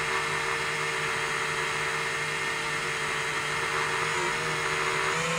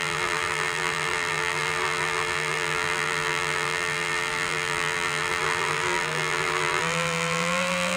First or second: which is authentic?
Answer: first